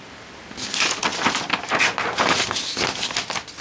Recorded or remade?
recorded